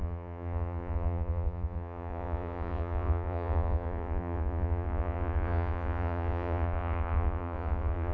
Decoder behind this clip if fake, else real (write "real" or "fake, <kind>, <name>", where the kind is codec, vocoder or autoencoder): fake, vocoder, Vocos